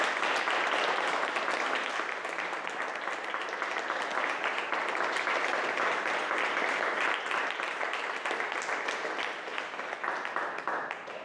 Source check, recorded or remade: recorded